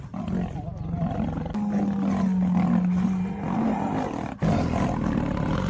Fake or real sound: real